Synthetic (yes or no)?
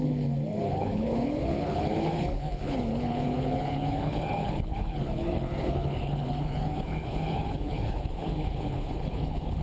yes